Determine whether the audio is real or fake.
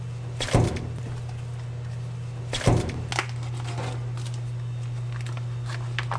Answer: real